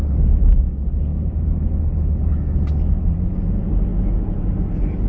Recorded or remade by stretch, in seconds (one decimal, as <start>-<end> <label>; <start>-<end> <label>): 0.0-5.1 recorded